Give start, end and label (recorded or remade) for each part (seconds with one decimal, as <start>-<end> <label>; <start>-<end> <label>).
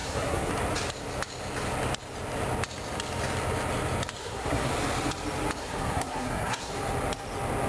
0.0-0.5 remade; 0.5-4.2 recorded; 4.2-4.7 remade; 4.7-5.6 recorded; 5.6-6.7 remade; 6.7-7.7 recorded